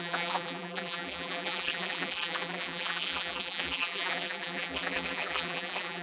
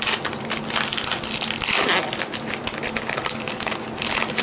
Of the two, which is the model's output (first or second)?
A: first